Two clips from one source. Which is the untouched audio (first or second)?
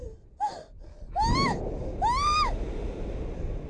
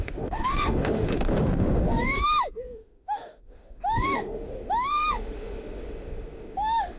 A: first